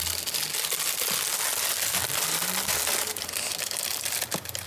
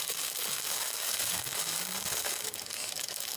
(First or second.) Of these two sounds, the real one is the first